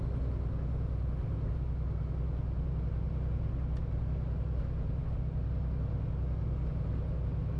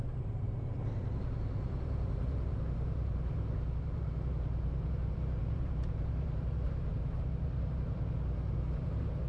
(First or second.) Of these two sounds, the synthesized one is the second